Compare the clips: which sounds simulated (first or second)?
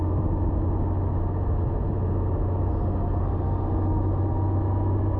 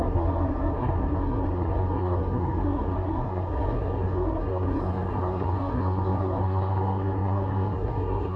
second